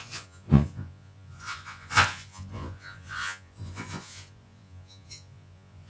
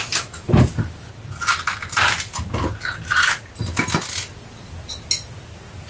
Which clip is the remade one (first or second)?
first